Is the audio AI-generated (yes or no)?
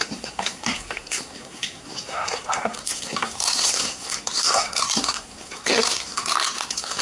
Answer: yes